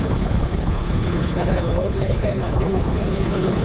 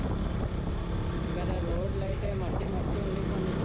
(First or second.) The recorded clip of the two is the second